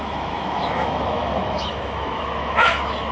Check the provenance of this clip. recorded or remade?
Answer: remade